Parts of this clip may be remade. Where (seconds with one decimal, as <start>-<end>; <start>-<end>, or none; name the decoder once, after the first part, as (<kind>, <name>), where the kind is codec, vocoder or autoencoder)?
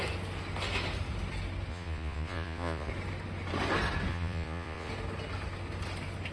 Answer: 1.7-2.9 (vocoder, Vocos); 4.1-4.9